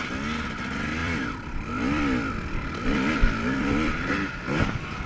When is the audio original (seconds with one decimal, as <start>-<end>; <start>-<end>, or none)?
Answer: 0.0-1.0; 4.1-5.1